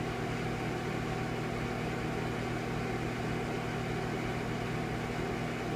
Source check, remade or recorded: recorded